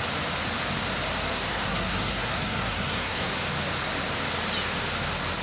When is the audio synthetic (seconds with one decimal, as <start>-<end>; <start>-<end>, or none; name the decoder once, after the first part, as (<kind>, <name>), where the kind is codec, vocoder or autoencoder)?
1.5-3.3 (codec, SNAC)